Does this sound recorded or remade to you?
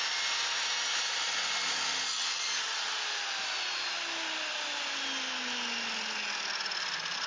recorded